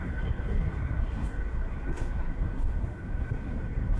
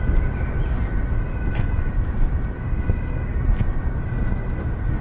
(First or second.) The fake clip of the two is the first